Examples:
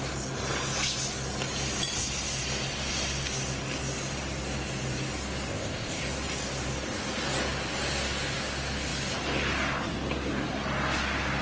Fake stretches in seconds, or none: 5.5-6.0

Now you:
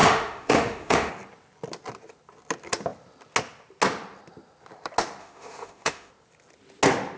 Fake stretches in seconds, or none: 0.0-1.1; 5.2-6.1

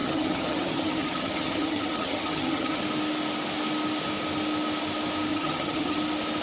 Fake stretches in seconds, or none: 0.0-2.8; 5.3-6.0

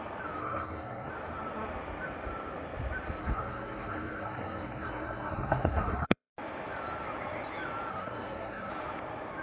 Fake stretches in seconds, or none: 0.4-1.1; 3.2-6.3; 7.9-8.7

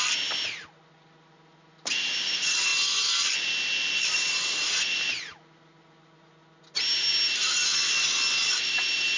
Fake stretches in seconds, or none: none

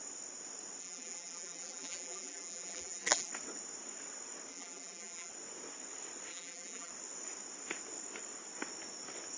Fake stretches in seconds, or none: 0.8-3.3; 4.5-5.3; 6.3-6.9

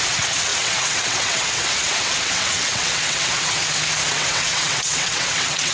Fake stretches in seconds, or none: 0.0-3.6; 4.1-5.7

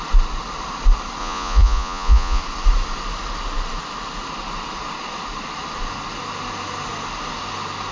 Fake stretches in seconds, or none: 1.2-2.4